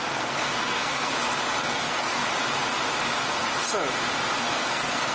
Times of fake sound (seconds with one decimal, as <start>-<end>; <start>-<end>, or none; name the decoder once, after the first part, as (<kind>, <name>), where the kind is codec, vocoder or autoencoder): 0.0-1.1 (codec, SNAC); 1.6-2.2; 4.4-5.1

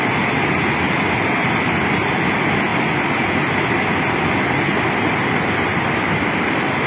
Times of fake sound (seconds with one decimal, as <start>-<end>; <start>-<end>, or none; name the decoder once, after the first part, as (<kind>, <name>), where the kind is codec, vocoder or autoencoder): 5.7-6.5 (vocoder, BigVGAN v2)

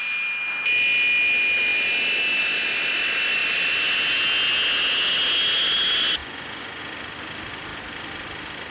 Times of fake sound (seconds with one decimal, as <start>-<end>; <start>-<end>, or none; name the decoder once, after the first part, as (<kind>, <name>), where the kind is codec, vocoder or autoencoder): 6.2-6.8 (vocoder, Vocos)

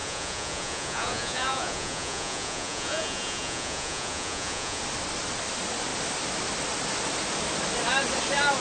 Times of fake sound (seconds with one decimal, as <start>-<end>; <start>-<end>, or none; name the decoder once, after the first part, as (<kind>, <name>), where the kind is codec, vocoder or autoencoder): 0.0-4.8 (vocoder, Vocos)

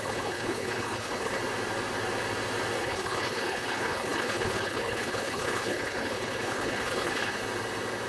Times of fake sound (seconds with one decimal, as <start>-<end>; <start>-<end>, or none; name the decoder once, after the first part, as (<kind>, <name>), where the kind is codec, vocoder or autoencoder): 0.0-1.4 (codec, HILCodec); 2.8-7.4

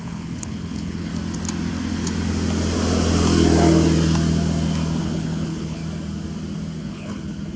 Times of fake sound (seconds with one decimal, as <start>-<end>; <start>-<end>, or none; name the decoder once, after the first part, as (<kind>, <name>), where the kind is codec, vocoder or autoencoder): 0.0-1.1 (codec, HILCodec); 5.0-5.8; 6.8-7.6